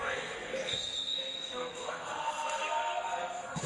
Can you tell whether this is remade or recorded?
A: remade